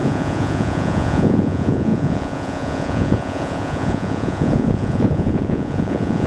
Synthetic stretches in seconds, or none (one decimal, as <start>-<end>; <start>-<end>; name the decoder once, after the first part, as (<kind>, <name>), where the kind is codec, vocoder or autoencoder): 0.0-6.3 (vocoder, Vocos)

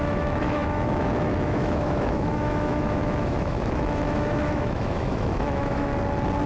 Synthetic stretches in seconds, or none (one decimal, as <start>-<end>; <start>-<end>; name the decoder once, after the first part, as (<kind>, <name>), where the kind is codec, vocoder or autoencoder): 0.0-5.9 (autoencoder, DAC-VAE)

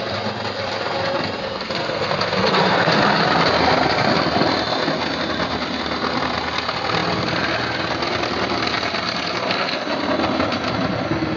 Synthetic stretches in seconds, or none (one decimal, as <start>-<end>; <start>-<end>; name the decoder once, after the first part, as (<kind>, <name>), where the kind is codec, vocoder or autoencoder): 1.4-3.0 (codec, SNAC)

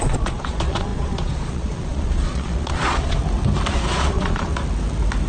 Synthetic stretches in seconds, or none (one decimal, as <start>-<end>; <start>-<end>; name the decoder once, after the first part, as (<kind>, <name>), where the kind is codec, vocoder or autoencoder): 0.0-3.2 (vocoder, Vocos); 3.7-4.5

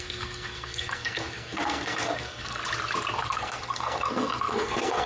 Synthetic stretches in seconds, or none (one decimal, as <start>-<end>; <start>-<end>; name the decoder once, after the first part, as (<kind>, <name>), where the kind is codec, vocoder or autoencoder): 0.0-2.6 (codec, SNAC); 3.2-5.1

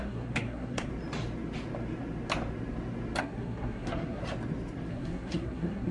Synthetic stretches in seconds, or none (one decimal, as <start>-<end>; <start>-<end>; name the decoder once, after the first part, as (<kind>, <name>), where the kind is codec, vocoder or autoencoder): 0.0-0.9 (codec, SNAC); 3.2-4.2; 4.9-5.9